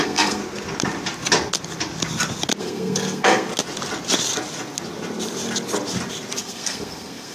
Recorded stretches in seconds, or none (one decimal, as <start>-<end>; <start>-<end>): 0.4-2.6; 3.5-6.4